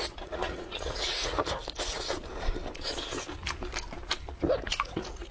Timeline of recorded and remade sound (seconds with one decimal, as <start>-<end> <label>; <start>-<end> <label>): 0.0-1.4 remade; 1.4-4.6 recorded; 4.6-5.3 remade